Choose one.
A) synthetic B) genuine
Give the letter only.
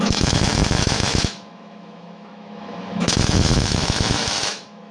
A